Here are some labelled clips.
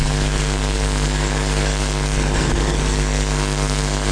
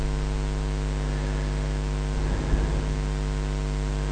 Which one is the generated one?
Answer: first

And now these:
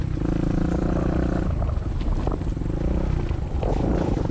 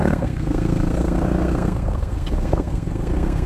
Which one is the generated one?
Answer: second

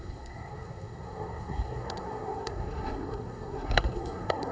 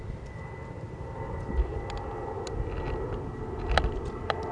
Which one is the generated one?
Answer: first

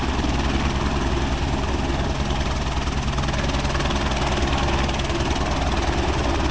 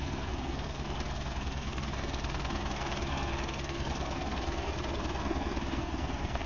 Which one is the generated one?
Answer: second